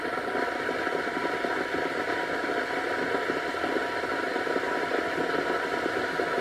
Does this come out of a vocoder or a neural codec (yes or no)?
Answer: yes